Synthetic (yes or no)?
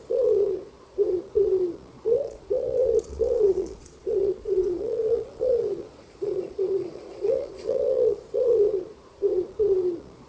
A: yes